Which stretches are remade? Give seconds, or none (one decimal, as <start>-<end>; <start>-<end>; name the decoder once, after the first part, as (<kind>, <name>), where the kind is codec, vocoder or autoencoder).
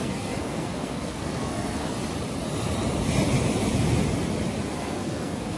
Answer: 0.0-1.9 (codec, SNAC); 4.8-5.6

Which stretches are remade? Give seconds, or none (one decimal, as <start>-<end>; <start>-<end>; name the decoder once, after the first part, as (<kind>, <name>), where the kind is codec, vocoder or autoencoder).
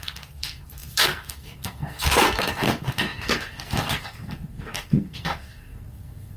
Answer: 0.0-6.4 (codec, SNAC)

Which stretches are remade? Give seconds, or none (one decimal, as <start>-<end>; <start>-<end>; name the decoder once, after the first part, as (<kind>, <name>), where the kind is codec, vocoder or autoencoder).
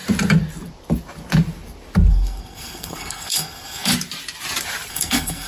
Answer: 2.1-3.9 (codec, SNAC); 4.9-5.5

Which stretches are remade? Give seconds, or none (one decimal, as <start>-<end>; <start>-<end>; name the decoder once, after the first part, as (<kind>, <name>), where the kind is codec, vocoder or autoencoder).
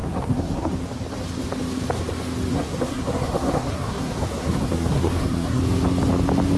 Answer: 0.0-0.7 (codec, SNAC); 2.5-5.6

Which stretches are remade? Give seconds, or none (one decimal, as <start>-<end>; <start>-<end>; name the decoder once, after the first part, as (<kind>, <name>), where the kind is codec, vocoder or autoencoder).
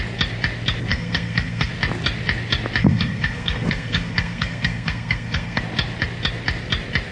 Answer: 0.9-1.7 (codec, SNAC); 2.8-5.6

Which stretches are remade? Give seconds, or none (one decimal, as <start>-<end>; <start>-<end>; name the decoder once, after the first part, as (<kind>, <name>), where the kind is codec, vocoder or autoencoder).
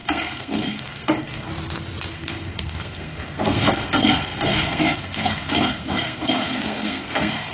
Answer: 0.0-1.5 (codec, SNAC); 2.1-7.5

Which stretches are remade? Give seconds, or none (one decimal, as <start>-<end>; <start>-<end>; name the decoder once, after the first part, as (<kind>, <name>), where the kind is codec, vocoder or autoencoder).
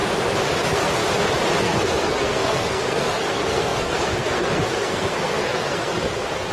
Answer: 0.6-1.0 (codec, SNAC); 1.6-6.5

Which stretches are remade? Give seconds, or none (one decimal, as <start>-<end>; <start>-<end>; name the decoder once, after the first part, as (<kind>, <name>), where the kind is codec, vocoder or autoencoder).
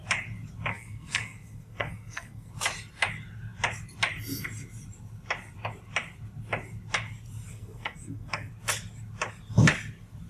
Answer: 0.7-2.5 (codec, SNAC); 7.5-8.5